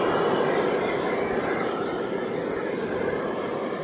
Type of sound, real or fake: real